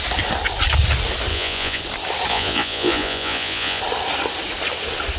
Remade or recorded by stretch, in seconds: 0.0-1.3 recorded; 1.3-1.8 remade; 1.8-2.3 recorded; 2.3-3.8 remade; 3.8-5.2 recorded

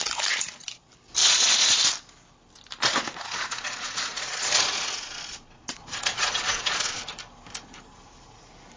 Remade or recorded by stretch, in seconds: 0.0-1.2 recorded; 1.2-1.8 remade; 1.8-2.8 recorded; 2.8-7.0 remade; 7.0-8.8 recorded

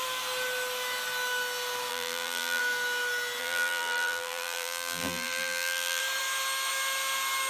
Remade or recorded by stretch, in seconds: 0.0-1.9 recorded; 1.9-2.6 remade; 2.6-3.4 recorded; 3.4-6.0 remade; 6.0-7.5 recorded